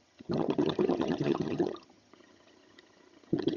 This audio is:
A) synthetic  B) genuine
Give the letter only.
A